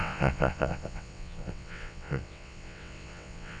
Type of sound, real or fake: fake